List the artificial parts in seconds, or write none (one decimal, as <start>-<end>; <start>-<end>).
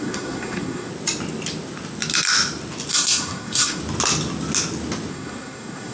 0.0-0.9; 2.9-3.8; 5.1-5.9